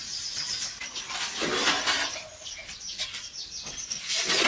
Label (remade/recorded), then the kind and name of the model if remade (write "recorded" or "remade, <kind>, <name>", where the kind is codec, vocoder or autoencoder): remade, vocoder, BigVGAN v2